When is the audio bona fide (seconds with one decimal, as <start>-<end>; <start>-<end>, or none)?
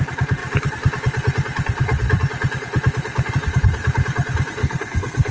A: 0.0-4.6